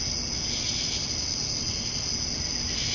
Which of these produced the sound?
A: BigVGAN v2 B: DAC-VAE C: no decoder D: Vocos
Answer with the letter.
C